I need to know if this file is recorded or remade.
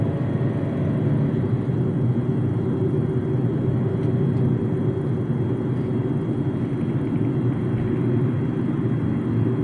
recorded